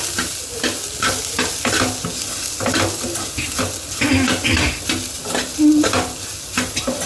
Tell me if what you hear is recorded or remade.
recorded